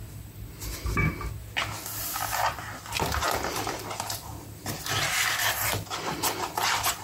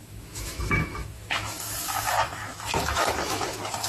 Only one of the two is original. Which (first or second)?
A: first